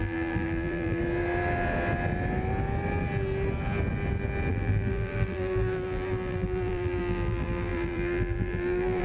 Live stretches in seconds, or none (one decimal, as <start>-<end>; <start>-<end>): 1.0-4.5